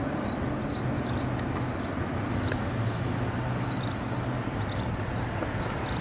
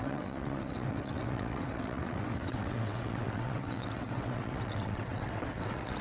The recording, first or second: first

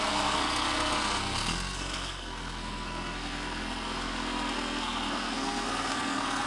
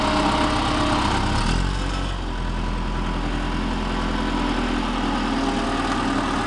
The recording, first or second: second